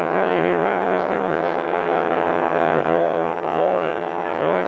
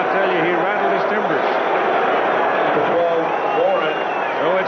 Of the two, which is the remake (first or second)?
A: first